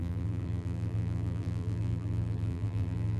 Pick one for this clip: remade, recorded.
remade